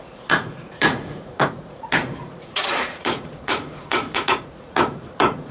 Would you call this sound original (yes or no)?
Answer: no